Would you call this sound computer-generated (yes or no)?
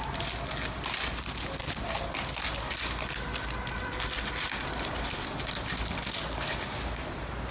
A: no